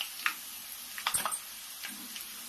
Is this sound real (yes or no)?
yes